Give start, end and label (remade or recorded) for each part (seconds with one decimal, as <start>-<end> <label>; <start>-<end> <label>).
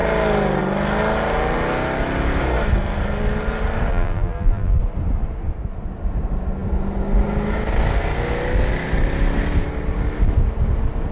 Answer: 0.0-3.9 recorded; 3.9-4.8 remade; 4.8-11.1 recorded